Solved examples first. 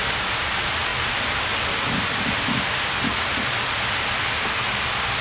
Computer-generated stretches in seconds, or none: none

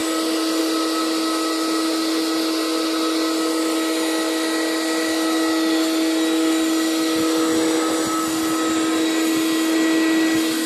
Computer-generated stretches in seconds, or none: none

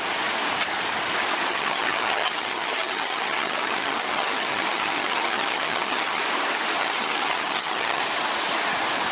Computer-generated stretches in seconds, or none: 1.5-6.2 (vocoder, HiFi-GAN); 6.8-8.0

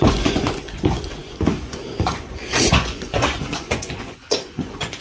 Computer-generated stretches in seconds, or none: 0.0-5.0 (vocoder, Vocos)